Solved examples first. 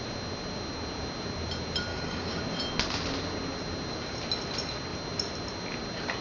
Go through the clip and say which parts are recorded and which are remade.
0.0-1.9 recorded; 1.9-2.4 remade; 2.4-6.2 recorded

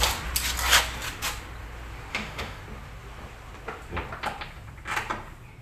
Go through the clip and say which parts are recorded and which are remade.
0.0-2.1 recorded; 2.1-2.6 remade; 2.6-5.6 recorded

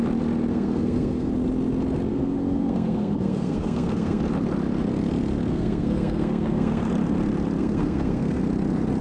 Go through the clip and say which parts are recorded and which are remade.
0.0-0.5 recorded; 0.5-1.3 remade; 1.3-2.1 recorded; 2.1-4.2 remade; 4.2-5.5 recorded; 5.5-6.9 remade; 6.9-7.6 recorded; 7.6-8.4 remade; 8.4-9.0 recorded

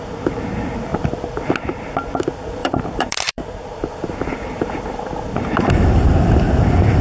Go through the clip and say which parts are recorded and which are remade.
0.0-2.6 recorded; 2.6-6.1 remade; 6.1-7.0 recorded

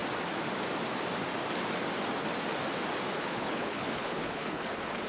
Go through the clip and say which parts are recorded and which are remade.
0.0-3.1 recorded; 3.1-5.1 remade

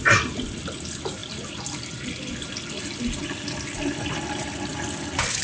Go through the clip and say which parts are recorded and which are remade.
0.0-5.4 recorded